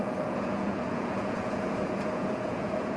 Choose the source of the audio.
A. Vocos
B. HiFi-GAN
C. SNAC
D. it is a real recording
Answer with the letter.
A